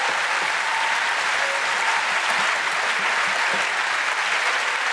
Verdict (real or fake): real